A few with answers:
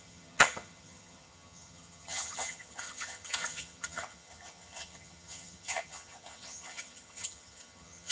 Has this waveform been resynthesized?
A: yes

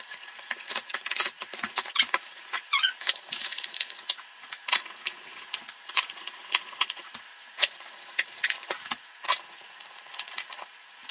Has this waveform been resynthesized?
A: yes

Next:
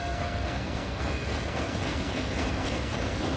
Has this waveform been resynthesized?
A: yes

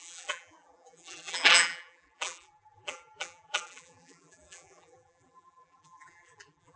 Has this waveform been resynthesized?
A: yes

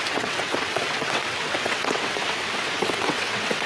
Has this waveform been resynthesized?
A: yes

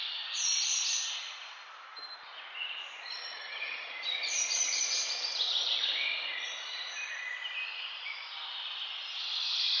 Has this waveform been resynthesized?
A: yes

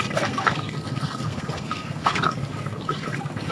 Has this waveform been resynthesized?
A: yes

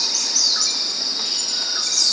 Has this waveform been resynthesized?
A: no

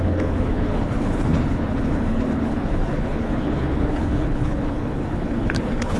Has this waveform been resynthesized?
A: yes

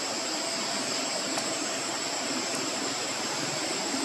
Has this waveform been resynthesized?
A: yes